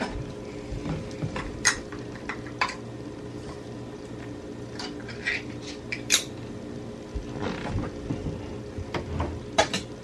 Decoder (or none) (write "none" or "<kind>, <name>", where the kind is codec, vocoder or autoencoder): vocoder, BigVGAN v2